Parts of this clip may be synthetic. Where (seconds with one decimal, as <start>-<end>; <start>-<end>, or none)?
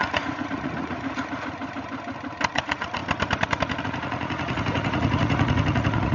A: 0.0-1.6; 2.5-3.0; 3.8-6.1